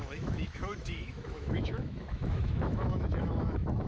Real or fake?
fake